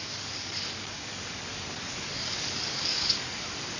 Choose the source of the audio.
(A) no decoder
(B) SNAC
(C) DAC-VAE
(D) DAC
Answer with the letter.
D